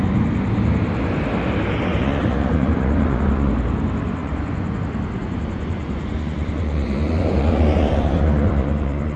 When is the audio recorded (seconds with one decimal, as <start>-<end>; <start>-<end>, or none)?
0.0-1.9; 3.5-4.2; 4.8-5.2